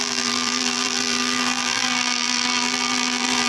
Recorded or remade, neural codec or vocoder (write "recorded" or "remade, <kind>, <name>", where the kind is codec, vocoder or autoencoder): remade, vocoder, BigVGAN v2